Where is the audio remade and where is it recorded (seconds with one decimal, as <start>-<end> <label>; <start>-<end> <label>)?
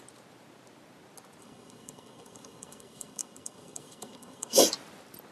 0.0-1.4 recorded; 1.4-4.6 remade; 4.6-5.3 recorded